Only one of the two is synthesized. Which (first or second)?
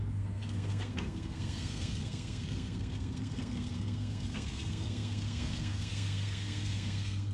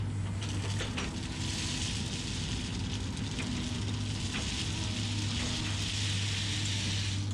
first